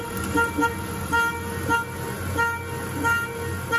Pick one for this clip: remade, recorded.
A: recorded